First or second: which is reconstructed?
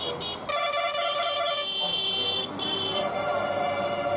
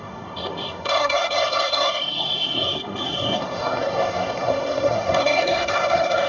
second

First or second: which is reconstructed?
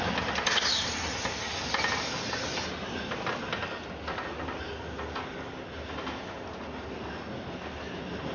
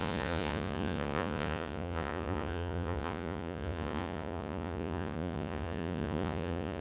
second